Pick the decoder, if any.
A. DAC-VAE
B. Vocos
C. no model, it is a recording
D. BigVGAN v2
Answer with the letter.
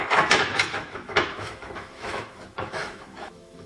A